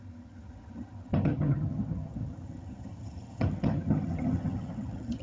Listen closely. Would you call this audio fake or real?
fake